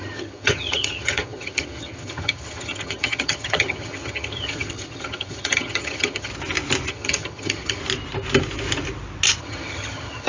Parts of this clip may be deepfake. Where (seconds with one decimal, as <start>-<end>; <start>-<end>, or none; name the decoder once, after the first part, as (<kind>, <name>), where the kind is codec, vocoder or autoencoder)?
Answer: 0.0-6.3 (vocoder, HiFi-GAN); 6.9-7.8; 9.4-10.3